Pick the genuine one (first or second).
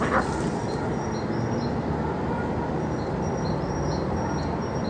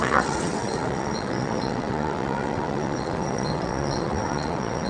first